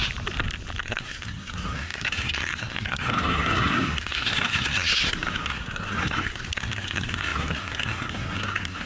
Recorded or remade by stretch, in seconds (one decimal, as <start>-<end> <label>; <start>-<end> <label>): 0.0-0.8 recorded; 0.8-8.9 remade